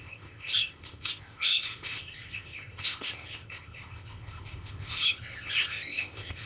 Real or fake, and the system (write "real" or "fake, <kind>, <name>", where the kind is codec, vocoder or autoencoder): fake, codec, ZipCodec